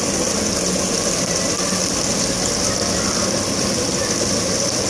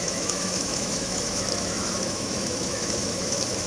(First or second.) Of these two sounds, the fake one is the second